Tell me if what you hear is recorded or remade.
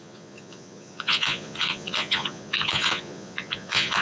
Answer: remade